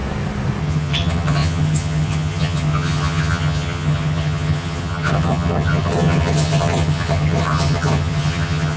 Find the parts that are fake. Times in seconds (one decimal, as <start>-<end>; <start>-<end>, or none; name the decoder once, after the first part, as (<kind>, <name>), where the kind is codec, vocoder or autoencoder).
0.6-8.8 (vocoder, HiFi-GAN)